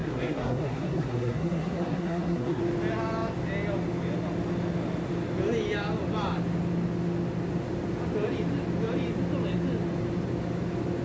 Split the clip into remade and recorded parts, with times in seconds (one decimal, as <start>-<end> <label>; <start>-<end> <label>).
0.0-2.6 remade; 2.6-11.0 recorded